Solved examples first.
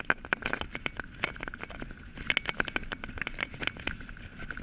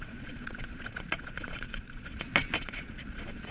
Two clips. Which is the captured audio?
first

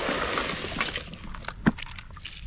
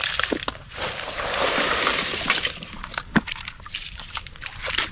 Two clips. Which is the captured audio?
first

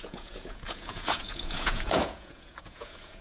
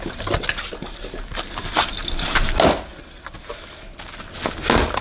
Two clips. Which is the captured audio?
second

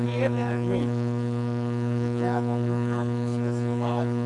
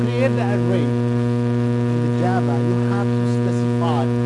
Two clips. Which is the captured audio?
second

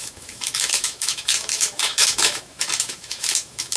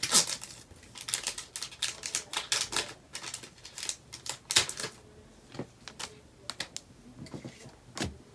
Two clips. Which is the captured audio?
second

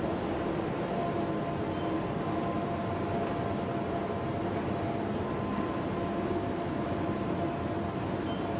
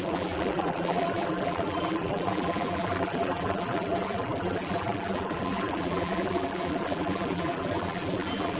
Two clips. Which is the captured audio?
first